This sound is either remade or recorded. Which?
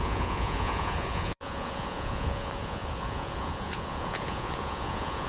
remade